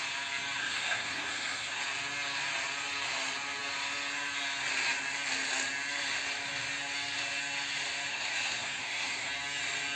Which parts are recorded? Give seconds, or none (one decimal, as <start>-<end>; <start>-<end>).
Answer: 0.0-0.6; 1.8-8.1; 9.3-10.0

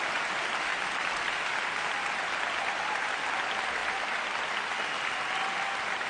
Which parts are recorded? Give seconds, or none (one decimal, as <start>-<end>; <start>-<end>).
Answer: 0.0-0.7; 2.3-6.1